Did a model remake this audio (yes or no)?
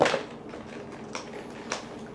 no